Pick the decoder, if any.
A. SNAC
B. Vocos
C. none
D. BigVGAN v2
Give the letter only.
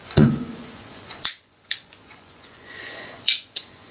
B